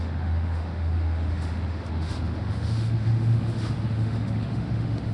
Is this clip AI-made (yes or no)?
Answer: yes